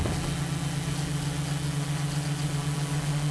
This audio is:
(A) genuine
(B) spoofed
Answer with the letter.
A